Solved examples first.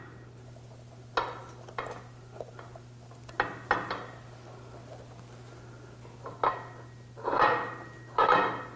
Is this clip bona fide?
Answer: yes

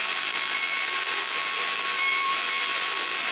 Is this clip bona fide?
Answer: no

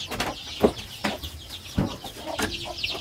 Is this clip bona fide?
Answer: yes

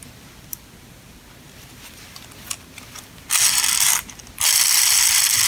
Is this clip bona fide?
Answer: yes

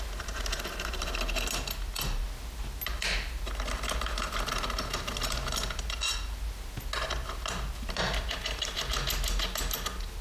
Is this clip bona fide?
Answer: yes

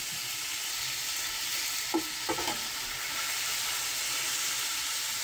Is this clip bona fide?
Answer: no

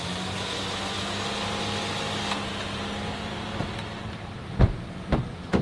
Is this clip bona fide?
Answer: yes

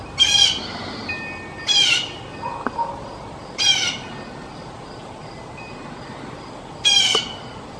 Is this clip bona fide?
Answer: no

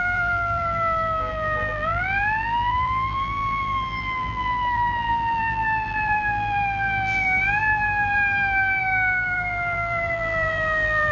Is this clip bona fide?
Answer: no